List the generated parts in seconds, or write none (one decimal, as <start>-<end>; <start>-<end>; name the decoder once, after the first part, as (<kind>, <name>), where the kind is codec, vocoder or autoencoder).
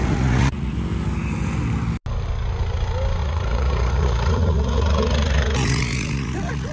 0.0-0.7 (vocoder, Vocos); 3.2-6.7